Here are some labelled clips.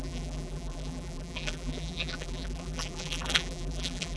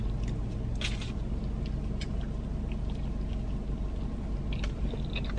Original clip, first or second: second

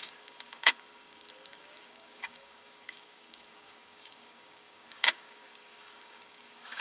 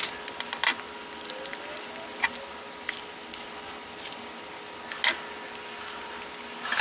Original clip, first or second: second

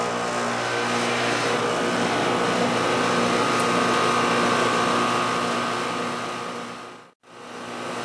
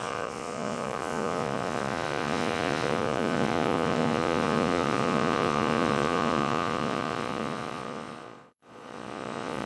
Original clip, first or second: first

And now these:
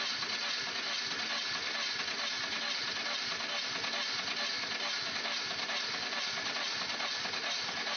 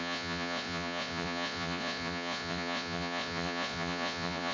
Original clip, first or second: first